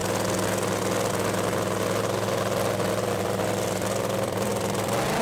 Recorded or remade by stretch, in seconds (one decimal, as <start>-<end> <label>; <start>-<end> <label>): 0.0-3.1 recorded; 3.1-5.2 remade